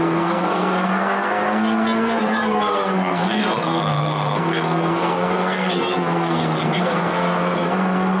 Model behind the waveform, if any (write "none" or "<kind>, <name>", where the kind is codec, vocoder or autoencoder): codec, SNAC